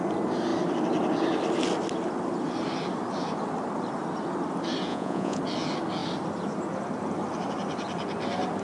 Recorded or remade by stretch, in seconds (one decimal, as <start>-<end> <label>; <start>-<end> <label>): 0.0-4.9 recorded; 4.9-5.4 remade; 5.4-8.6 recorded